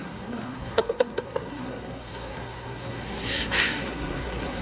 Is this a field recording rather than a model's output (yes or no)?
no